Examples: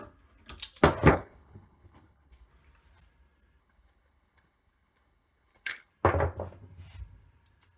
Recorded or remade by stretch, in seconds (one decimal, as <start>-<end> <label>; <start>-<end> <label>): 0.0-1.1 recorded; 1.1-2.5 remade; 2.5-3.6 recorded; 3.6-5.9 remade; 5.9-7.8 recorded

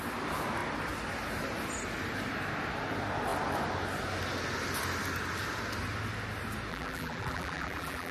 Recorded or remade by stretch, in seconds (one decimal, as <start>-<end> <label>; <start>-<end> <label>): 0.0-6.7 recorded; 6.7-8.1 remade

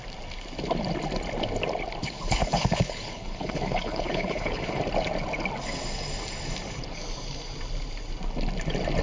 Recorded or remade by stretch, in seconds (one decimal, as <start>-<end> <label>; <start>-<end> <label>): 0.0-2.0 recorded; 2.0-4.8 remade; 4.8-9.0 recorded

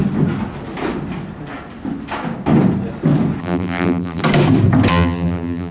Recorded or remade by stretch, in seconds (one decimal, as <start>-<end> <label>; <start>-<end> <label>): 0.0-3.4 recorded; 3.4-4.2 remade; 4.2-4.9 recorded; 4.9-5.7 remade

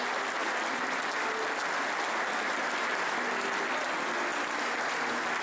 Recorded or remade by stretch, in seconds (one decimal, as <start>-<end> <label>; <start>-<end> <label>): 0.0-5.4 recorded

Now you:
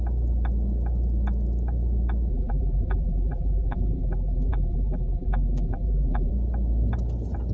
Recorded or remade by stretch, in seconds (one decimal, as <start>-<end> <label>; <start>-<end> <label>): 0.0-2.3 recorded; 2.3-6.3 remade; 6.3-7.5 recorded

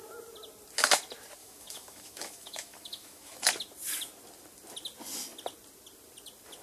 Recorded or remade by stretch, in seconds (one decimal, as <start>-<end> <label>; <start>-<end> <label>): 0.0-1.4 recorded; 1.4-3.5 remade; 3.5-6.6 recorded